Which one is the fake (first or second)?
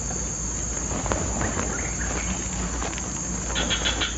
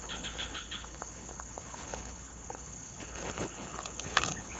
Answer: second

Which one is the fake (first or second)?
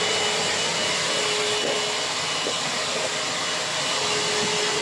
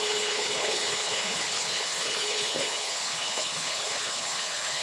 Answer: second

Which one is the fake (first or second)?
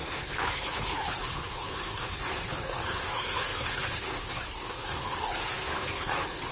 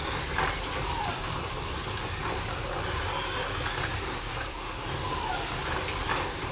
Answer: first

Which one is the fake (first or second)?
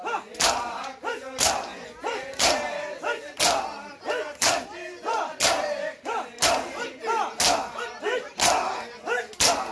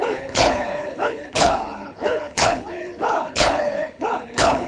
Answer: second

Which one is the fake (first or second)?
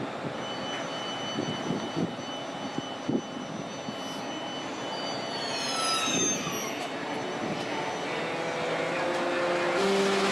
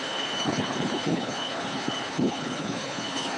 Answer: second